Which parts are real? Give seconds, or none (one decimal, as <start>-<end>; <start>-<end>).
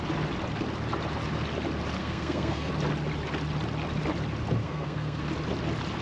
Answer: 0.0-2.0; 2.7-4.6; 5.2-6.0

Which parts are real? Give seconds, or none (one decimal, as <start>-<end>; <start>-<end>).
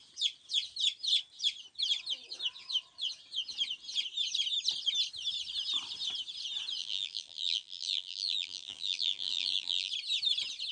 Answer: 0.0-6.8; 9.9-10.7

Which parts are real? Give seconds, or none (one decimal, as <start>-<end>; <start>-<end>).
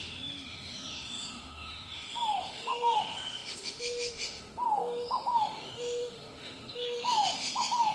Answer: none